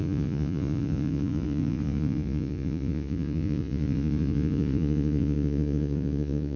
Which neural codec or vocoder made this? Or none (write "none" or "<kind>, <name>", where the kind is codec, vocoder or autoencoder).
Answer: vocoder, Vocos